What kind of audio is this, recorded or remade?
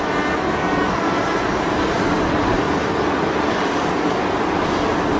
recorded